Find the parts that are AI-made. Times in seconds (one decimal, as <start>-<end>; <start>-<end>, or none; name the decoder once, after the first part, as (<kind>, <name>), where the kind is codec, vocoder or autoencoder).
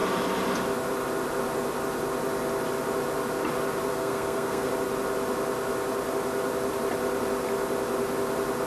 3.9-4.7 (codec, SNAC)